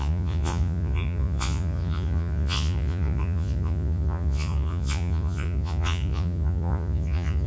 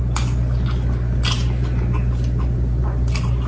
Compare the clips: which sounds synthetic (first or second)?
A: first